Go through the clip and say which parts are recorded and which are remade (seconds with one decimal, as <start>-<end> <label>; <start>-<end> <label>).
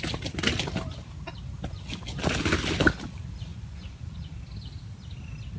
0.0-3.5 recorded; 3.5-4.4 remade; 4.4-5.6 recorded